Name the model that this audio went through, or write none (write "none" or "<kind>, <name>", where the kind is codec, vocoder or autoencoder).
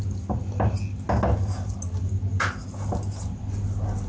none